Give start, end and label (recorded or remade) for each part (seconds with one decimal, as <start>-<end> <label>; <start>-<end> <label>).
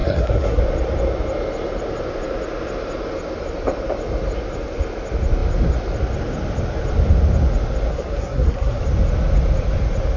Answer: 0.0-0.6 remade; 0.6-7.9 recorded; 7.9-8.8 remade; 8.8-10.2 recorded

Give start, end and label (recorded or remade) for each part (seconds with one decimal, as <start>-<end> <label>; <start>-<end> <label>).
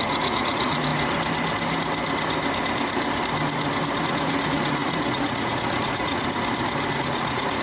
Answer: 0.0-0.9 remade; 0.9-4.0 recorded; 4.0-6.2 remade; 6.2-7.0 recorded; 7.0-7.6 remade